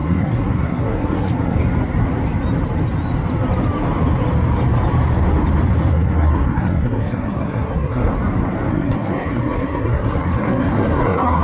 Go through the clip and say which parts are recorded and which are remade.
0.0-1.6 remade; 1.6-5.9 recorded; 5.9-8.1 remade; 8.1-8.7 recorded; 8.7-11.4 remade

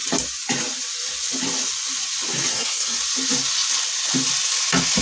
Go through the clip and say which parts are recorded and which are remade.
0.0-2.5 recorded; 2.5-3.0 remade; 3.0-5.0 recorded

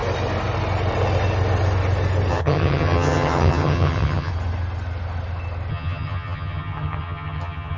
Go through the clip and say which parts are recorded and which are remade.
0.0-2.3 recorded; 2.3-4.3 remade; 4.3-5.7 recorded; 5.7-7.8 remade

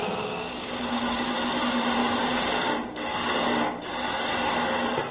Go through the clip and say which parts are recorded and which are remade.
0.0-1.3 remade; 1.3-2.0 recorded; 2.0-3.8 remade; 3.8-5.1 recorded